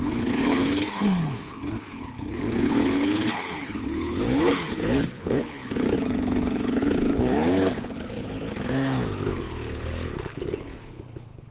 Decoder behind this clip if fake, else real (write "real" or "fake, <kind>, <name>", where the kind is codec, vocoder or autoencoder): fake, codec, HILCodec